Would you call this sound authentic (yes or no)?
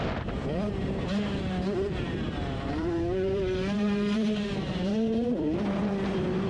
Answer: no